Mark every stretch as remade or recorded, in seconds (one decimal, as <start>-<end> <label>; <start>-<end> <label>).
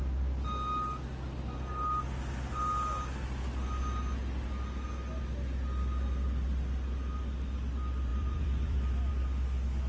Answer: 0.0-8.1 recorded; 8.1-9.1 remade; 9.1-9.9 recorded